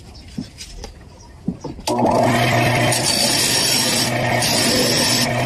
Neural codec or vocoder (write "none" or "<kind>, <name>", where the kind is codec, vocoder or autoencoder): none